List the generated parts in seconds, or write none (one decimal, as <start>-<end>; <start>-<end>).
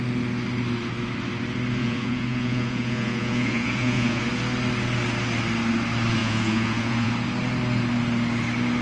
1.8-4.3; 6.2-7.1